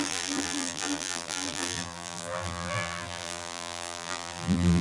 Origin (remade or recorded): remade